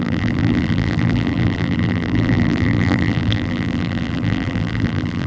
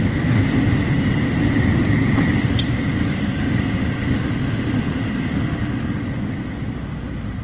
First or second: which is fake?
first